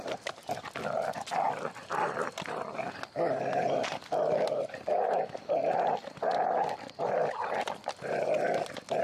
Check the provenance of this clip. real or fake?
real